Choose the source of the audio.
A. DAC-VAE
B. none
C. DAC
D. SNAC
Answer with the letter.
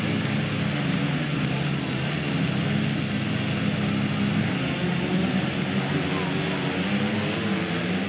B